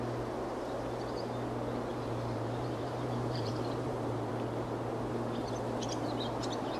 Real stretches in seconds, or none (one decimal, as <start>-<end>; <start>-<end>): 0.0-1.9; 4.3-6.8